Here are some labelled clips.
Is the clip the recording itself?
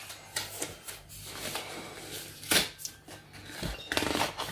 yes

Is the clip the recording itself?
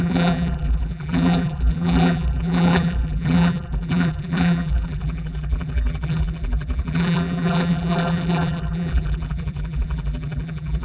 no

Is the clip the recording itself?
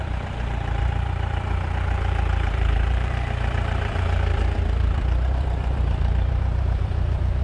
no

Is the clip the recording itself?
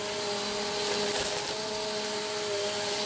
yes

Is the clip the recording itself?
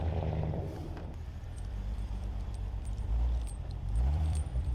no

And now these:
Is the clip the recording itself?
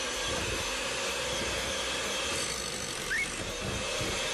yes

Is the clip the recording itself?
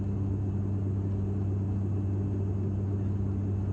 yes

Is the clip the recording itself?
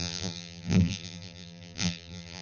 no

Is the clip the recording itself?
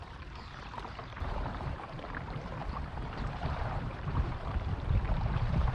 no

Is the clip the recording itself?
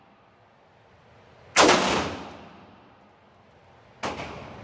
yes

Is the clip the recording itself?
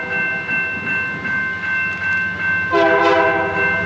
yes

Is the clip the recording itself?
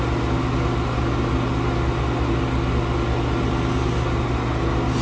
yes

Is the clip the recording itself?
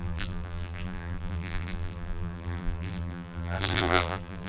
no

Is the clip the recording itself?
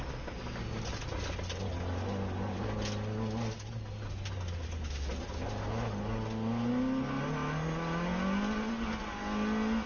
yes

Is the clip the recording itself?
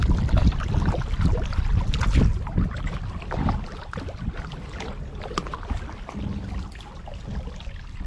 yes